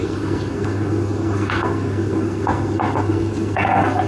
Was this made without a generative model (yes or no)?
no